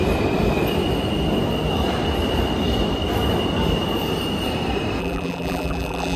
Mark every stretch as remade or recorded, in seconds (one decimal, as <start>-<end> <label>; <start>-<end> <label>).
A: 0.0-5.0 recorded; 5.0-6.2 remade